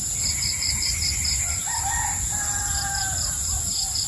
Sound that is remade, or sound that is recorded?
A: remade